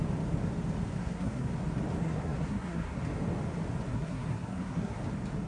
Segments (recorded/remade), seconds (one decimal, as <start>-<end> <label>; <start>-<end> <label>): 0.0-1.0 recorded; 1.0-1.5 remade; 1.5-2.0 recorded; 2.0-3.0 remade; 3.0-3.9 recorded; 3.9-5.0 remade; 5.0-5.5 recorded